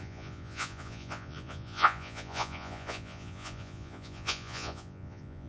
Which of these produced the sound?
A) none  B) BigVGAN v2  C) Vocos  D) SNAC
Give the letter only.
C